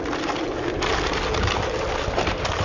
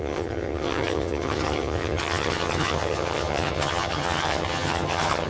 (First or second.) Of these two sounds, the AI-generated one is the second